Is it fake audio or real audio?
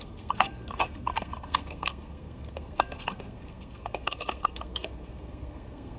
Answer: fake